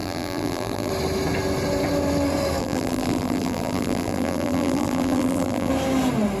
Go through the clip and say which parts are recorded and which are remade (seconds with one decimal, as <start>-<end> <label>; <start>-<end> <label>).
0.0-0.9 remade; 0.9-2.6 recorded; 2.6-5.7 remade; 5.7-6.4 recorded